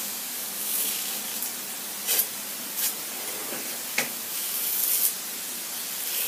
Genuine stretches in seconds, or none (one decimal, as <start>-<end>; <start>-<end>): 1.3-3.9; 4.8-6.3